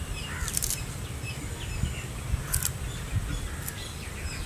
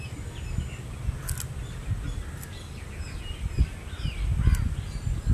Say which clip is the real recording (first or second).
second